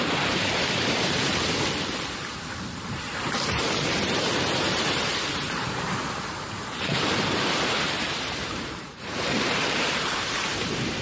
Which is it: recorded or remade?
remade